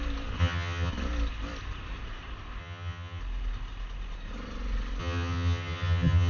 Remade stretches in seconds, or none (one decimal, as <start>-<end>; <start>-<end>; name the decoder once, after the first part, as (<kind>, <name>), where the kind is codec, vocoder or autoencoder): 0.4-0.9 (vocoder, HiFi-GAN); 2.6-3.2; 5.0-6.3